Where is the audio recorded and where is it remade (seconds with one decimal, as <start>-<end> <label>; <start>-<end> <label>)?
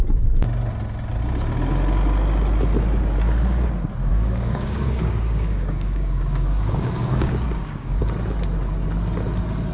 0.0-4.1 recorded; 4.1-8.0 remade; 8.0-9.7 recorded